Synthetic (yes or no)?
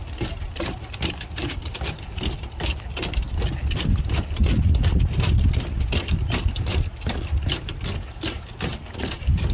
no